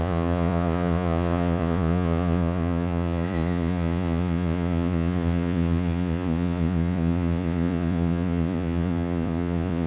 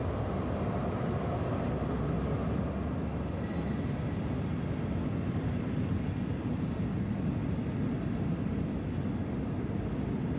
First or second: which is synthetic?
first